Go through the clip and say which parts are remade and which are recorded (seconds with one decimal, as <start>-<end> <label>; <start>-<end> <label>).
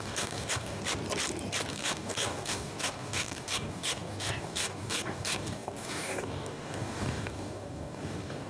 0.0-0.8 remade; 0.8-1.7 recorded; 1.7-8.5 remade